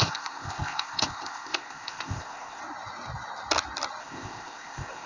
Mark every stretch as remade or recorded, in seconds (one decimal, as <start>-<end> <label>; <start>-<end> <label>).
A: 0.0-2.6 remade; 2.6-4.0 recorded; 4.0-5.1 remade

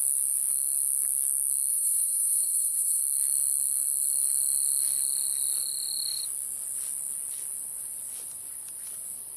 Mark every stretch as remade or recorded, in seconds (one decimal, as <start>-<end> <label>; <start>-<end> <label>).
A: 0.0-1.7 recorded; 1.7-3.0 remade; 3.0-9.4 recorded

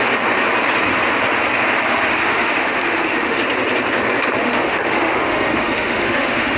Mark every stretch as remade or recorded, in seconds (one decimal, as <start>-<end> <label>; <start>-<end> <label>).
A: 0.0-1.9 recorded; 1.9-3.4 remade; 3.4-4.4 recorded; 4.4-6.6 remade